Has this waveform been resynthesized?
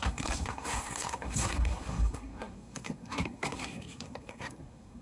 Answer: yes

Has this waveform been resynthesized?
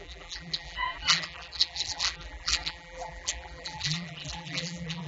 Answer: yes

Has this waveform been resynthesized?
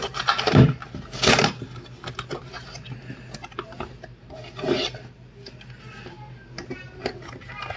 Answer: no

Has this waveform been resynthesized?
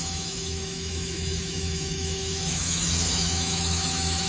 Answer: yes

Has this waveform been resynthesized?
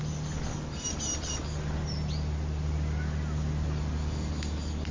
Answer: no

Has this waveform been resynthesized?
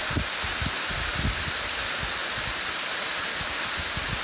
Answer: no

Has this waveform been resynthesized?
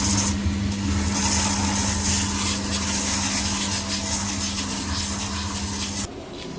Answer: no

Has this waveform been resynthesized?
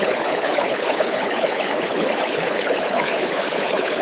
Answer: yes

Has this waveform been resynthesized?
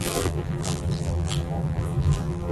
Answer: yes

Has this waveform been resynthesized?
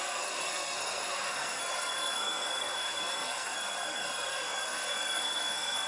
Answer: yes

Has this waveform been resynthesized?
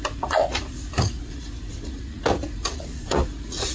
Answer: yes